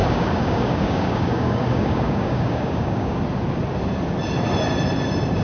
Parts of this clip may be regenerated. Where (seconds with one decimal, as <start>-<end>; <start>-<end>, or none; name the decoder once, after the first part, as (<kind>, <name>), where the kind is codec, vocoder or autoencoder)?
0.0-3.2 (codec, DAC)